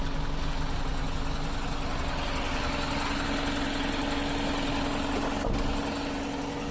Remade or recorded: recorded